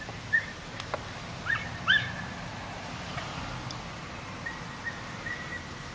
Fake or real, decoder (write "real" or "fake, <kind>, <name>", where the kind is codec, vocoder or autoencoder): real